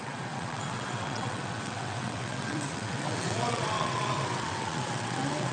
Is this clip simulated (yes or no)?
yes